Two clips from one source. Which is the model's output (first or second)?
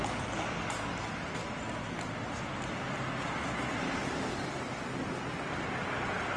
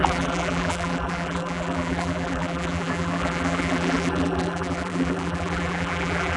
second